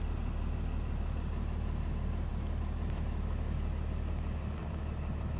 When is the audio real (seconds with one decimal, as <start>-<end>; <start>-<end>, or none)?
0.0-5.4